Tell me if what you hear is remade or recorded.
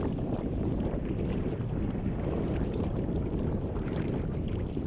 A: recorded